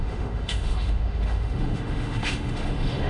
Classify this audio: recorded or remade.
remade